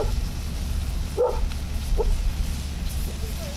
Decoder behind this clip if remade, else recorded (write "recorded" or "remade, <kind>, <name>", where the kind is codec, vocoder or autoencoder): recorded